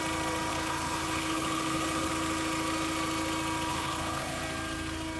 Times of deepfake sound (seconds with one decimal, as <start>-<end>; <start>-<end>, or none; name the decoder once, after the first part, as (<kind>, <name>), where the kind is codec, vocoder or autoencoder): 0.5-2.1 (codec, HILCodec); 3.7-4.4